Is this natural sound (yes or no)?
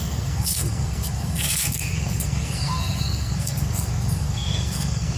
no